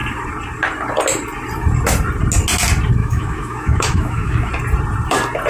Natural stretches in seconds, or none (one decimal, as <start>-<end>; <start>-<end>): 0.0-3.0; 4.5-5.5

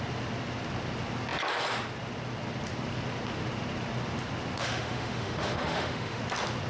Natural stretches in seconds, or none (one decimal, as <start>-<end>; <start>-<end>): 0.0-4.6; 6.2-6.7

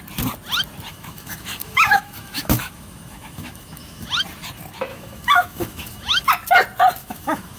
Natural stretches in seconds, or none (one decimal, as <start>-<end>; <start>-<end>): 0.0-0.9; 4.1-4.9; 6.3-7.0

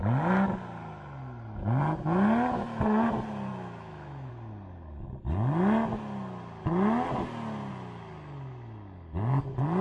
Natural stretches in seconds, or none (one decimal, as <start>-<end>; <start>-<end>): 0.0-3.5; 4.3-9.8

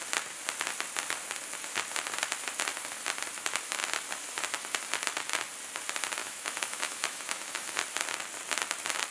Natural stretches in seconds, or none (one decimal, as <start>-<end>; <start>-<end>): 0.0-6.2; 7.8-9.1

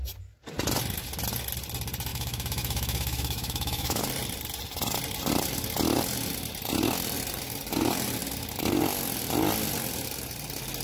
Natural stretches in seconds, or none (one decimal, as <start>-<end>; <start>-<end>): 0.0-2.1; 4.0-10.8